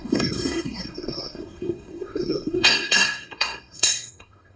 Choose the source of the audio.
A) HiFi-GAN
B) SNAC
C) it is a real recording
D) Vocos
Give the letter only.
B